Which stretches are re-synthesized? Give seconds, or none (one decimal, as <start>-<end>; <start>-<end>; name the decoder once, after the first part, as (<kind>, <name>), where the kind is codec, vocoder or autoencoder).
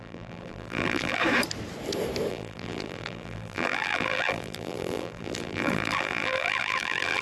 0.0-1.2 (vocoder, BigVGAN v2); 2.3-7.2